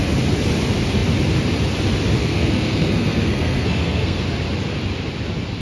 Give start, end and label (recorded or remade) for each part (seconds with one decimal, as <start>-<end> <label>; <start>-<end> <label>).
0.0-2.2 recorded; 2.2-4.2 remade; 4.2-5.6 recorded